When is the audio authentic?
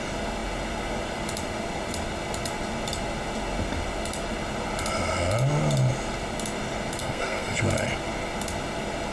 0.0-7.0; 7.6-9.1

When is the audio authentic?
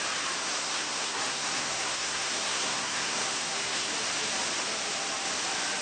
0.0-0.4; 3.9-5.8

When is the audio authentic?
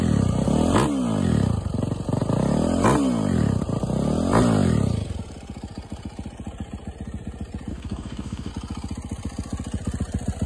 0.0-7.7; 8.5-10.5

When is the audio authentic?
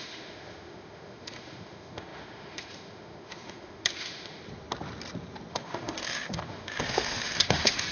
4.4-5.5